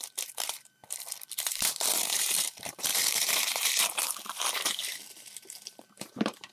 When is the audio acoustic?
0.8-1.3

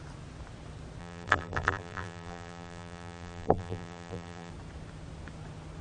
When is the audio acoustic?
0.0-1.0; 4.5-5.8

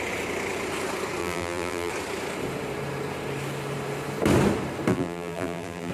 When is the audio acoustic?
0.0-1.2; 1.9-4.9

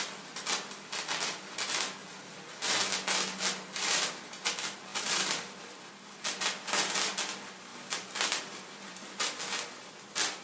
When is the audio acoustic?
0.0-2.0; 2.6-4.9; 5.7-7.7; 9.1-10.4

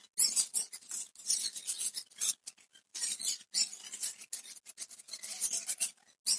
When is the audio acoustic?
0.0-6.4